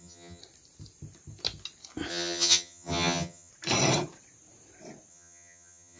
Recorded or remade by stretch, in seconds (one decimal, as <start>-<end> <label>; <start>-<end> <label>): 0.0-0.4 remade; 0.4-2.1 recorded; 2.1-3.5 remade; 3.5-5.1 recorded; 5.1-6.0 remade